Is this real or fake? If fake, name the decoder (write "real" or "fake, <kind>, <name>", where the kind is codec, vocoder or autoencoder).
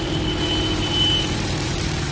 fake, vocoder, BigVGAN v2